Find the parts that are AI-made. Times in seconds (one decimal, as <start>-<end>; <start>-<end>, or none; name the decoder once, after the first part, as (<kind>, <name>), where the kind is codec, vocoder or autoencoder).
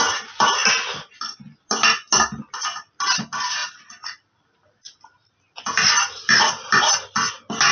3.6-7.3 (vocoder, BigVGAN v2)